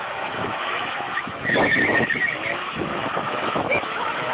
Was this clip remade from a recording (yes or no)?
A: yes